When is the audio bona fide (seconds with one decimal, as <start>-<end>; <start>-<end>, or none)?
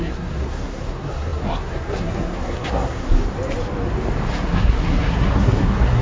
3.2-4.3